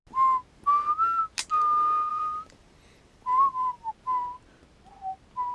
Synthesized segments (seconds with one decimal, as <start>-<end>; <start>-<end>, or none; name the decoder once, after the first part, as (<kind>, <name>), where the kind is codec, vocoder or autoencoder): 2.1-3.9 (vocoder, BigVGAN v2)

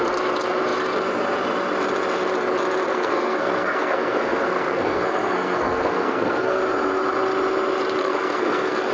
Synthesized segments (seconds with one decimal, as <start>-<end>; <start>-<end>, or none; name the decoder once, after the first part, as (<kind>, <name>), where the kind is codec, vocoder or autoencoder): 2.9-6.6 (codec, SNAC); 8.0-8.9

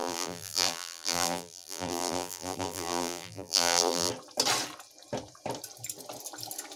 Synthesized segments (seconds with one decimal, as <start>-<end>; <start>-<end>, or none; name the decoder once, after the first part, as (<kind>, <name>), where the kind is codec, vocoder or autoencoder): 0.0-4.1 (vocoder, BigVGAN v2)

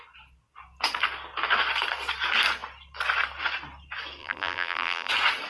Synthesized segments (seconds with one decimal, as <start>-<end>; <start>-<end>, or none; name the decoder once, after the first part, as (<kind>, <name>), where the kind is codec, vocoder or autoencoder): 4.2-5.1 (vocoder, BigVGAN v2)

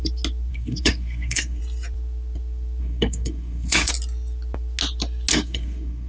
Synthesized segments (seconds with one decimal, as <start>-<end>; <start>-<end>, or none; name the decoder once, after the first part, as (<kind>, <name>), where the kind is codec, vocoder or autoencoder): 0.5-1.6 (codec, SNAC); 2.8-3.9; 5.3-6.1

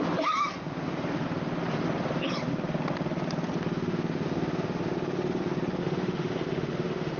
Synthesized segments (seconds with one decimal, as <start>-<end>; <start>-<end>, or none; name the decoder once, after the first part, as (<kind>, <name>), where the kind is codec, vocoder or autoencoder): 5.8-7.2 (autoencoder, DAC-VAE)